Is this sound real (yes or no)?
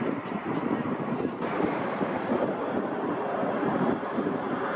no